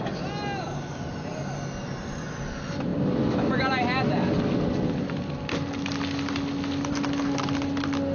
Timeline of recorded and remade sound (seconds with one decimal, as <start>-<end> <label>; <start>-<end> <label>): 0.0-8.1 recorded